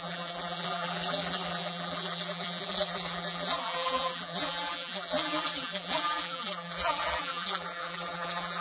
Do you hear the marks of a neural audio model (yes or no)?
yes